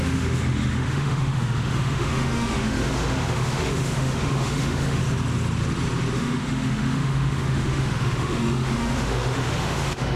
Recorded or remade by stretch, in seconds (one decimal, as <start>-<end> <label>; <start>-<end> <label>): 0.0-5.0 remade; 5.0-6.1 recorded; 6.1-10.2 remade